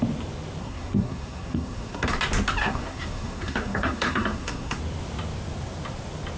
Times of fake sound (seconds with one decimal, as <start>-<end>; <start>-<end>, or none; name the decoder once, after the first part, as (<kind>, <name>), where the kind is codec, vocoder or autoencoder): 0.6-2.1 (codec, SNAC); 2.6-4.8